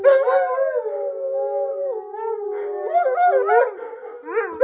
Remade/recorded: recorded